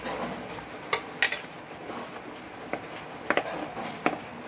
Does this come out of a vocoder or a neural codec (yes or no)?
no